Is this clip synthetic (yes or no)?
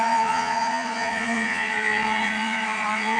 yes